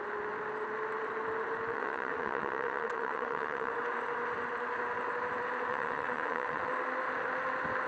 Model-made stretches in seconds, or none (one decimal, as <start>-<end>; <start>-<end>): 1.7-3.7; 5.7-6.7